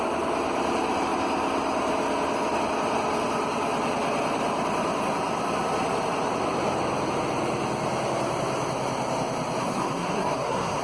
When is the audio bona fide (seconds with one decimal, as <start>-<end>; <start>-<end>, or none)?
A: 0.0-9.6